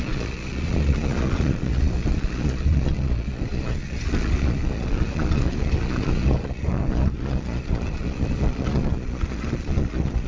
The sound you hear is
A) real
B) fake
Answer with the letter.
B